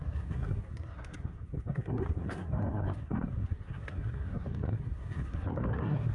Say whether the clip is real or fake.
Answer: fake